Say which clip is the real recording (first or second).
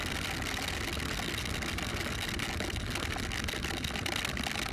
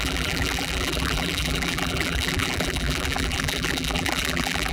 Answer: first